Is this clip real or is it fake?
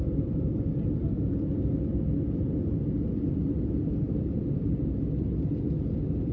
real